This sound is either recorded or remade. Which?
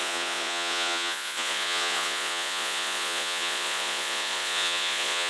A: remade